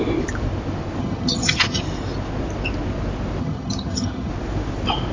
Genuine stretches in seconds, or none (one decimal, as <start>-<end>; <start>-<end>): 0.0-1.0; 1.8-3.4; 4.3-5.1